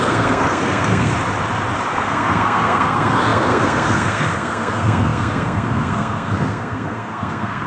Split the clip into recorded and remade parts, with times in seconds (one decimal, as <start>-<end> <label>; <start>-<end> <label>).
0.0-1.1 remade; 1.1-1.9 recorded; 1.9-7.7 remade